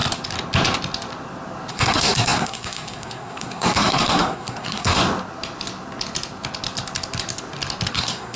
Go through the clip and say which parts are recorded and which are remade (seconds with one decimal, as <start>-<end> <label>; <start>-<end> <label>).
0.0-1.7 recorded; 1.7-5.0 remade; 5.0-7.9 recorded; 7.9-8.4 remade